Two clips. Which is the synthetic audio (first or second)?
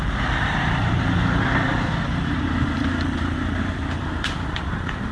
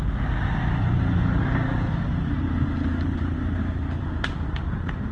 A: first